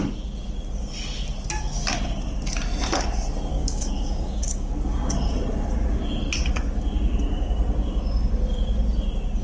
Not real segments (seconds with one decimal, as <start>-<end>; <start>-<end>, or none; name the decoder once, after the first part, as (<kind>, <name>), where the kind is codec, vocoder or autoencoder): 3.5-4.7 (codec, DAC)